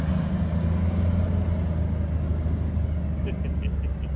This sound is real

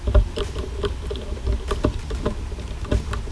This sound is real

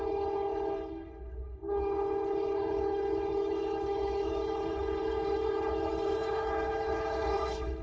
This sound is fake